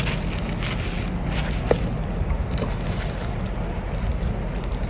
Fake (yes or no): no